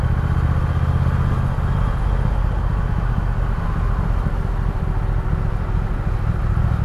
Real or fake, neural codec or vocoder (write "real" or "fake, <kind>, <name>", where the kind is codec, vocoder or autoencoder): real